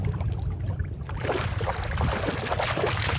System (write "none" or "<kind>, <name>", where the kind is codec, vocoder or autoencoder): none